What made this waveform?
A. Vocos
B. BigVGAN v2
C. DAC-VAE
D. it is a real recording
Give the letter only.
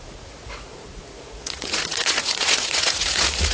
A